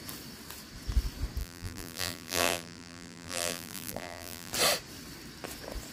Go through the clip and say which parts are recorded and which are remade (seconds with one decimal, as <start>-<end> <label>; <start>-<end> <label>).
0.0-1.4 recorded; 1.4-4.5 remade; 4.5-5.9 recorded